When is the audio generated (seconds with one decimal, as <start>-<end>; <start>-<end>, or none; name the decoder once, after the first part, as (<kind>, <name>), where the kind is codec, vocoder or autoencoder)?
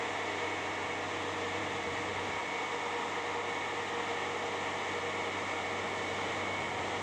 none